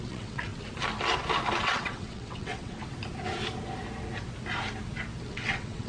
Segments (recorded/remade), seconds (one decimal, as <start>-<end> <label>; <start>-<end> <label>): 0.0-0.5 remade; 0.5-1.6 recorded; 1.6-2.8 remade; 2.8-5.3 recorded; 5.3-5.9 remade